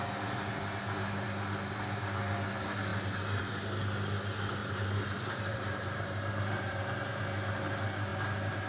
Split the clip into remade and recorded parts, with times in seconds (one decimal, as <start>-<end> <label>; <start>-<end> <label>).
0.0-4.6 recorded; 4.6-7.2 remade; 7.2-8.7 recorded